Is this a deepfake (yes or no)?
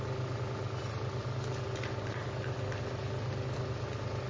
no